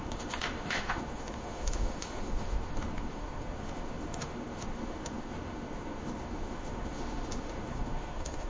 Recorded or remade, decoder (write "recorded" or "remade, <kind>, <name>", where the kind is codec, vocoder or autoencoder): remade, autoencoder, DAC-VAE